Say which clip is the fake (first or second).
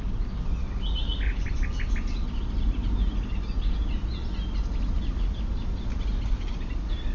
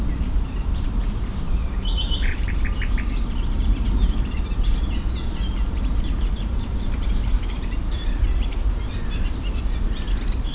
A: second